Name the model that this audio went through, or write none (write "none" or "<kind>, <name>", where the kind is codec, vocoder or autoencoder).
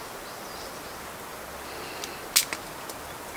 none